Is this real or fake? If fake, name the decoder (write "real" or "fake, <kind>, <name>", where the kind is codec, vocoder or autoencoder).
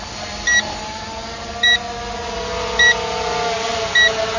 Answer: real